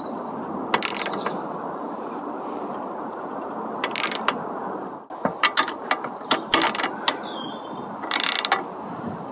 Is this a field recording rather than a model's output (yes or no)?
yes